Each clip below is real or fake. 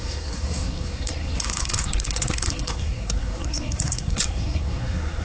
fake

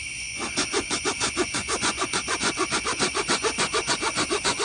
fake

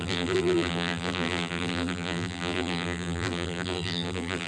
fake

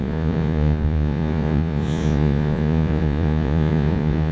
fake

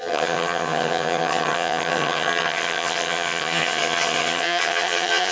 fake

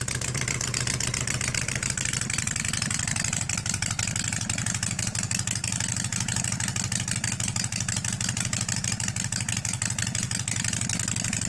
real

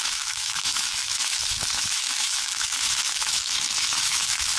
fake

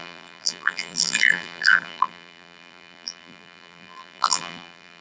fake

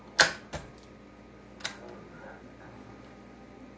real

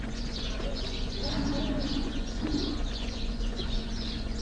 fake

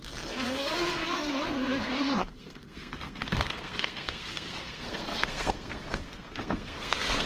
fake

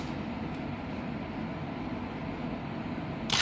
real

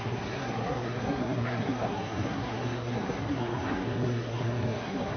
fake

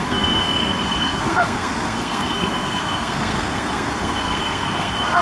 fake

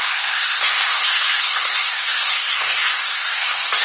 fake